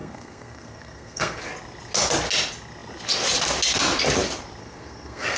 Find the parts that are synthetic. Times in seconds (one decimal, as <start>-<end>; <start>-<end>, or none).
0.0-1.4; 4.6-5.4